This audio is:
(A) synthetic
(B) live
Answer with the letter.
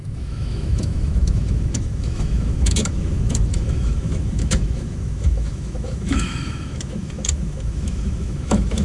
A